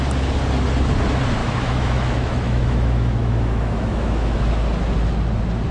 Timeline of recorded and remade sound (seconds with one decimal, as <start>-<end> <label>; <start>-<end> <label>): 0.0-1.4 recorded; 1.4-4.5 remade; 4.5-5.7 recorded